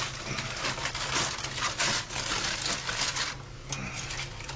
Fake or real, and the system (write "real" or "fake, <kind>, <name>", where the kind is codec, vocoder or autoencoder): real